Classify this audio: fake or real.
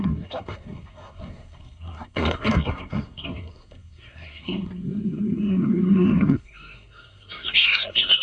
fake